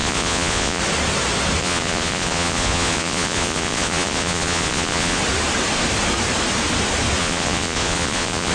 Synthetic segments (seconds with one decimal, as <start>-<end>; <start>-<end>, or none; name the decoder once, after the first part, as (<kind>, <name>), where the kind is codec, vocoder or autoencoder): 0.0-0.8 (vocoder, Vocos); 1.6-5.2; 7.2-8.5